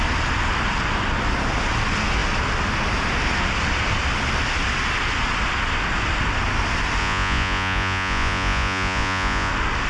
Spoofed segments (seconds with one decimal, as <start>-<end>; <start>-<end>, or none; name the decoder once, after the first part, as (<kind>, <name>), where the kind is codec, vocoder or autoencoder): 7.0-9.5 (vocoder, Vocos)